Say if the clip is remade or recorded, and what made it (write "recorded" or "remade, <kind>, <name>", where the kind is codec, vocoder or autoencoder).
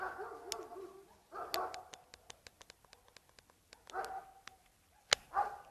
recorded